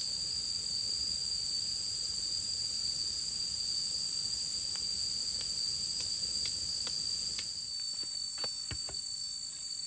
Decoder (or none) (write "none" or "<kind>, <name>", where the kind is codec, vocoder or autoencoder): none